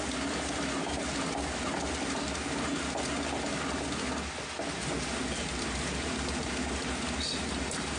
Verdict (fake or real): real